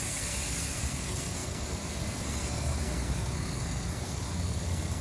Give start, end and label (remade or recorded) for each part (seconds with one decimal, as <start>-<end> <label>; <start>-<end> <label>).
0.0-5.0 remade